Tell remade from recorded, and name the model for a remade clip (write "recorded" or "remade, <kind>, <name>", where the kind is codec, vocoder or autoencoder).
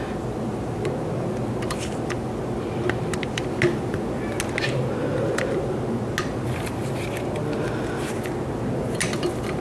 recorded